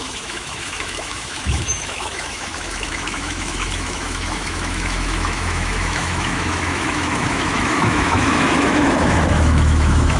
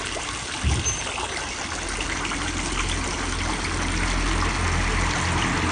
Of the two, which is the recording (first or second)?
second